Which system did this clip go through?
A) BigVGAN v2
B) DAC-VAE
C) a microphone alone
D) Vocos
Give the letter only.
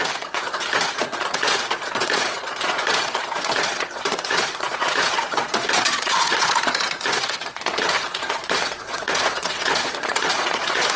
D